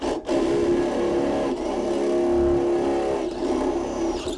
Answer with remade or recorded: recorded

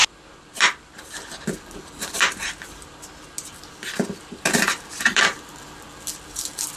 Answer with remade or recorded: remade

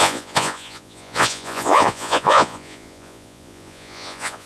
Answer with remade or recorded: remade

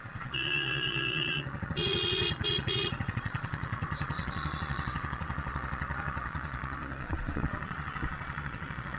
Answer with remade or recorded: remade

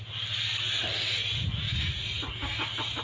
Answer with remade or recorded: recorded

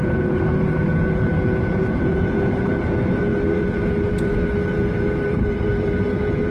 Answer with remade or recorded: remade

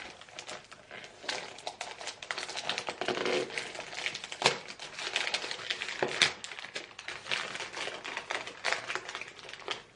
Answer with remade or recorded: recorded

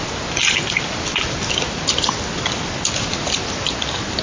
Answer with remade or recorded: recorded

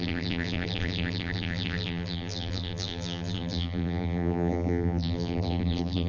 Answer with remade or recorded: remade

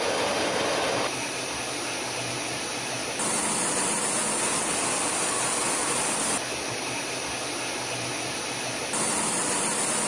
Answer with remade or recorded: recorded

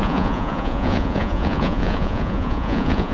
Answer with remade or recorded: remade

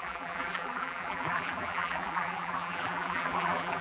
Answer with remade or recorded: remade